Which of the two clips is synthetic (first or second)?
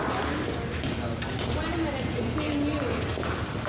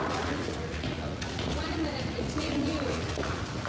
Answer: second